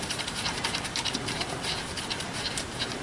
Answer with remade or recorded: remade